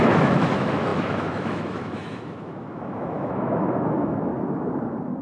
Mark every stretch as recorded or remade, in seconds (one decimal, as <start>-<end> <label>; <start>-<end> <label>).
0.0-4.3 remade; 4.3-5.2 recorded